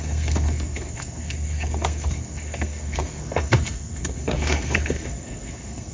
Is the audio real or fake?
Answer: fake